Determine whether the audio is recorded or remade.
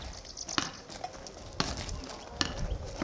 recorded